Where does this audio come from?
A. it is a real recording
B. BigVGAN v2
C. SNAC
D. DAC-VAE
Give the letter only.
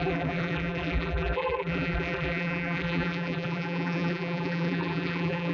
B